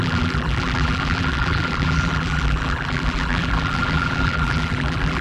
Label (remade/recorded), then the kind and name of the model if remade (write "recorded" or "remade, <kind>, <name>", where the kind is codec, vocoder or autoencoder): remade, vocoder, BigVGAN v2